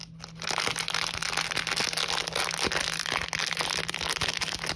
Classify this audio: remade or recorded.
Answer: recorded